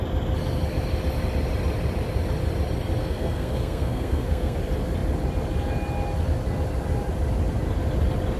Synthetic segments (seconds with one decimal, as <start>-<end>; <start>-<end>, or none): 3.0-4.6